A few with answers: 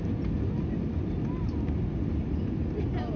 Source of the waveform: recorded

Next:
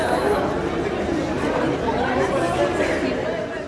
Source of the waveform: recorded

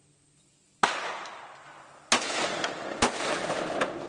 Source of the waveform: recorded